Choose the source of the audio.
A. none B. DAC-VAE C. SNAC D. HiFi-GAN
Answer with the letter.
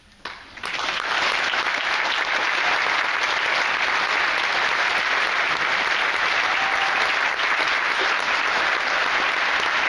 A